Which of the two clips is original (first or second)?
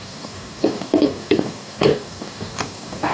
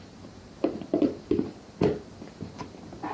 second